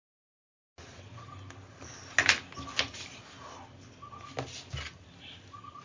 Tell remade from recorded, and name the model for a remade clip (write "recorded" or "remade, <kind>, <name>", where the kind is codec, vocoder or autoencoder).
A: recorded